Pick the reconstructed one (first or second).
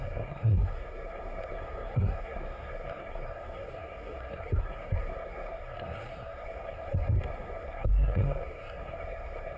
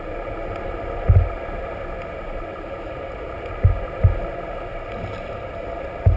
first